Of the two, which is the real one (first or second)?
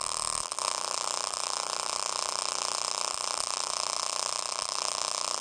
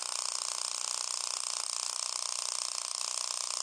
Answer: second